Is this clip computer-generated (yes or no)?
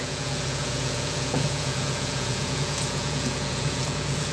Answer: yes